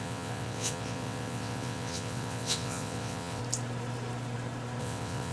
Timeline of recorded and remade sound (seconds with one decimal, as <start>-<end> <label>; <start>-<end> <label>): 0.0-3.4 remade; 3.4-4.8 recorded; 4.8-5.3 remade